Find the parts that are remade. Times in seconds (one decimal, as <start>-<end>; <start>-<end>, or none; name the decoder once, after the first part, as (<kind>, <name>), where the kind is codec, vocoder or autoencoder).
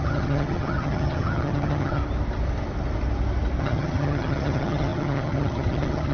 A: 0.0-2.0 (vocoder, HiFi-GAN); 3.6-6.1